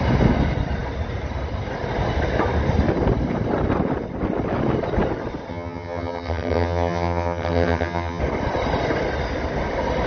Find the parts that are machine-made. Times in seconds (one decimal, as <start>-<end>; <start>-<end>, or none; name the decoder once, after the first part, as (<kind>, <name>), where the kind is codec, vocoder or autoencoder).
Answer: 5.5-8.2 (vocoder, HiFi-GAN)